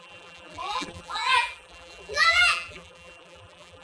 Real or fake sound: fake